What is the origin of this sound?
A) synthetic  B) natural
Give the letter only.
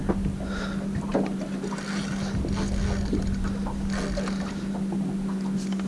B